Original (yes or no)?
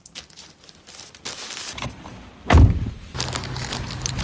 yes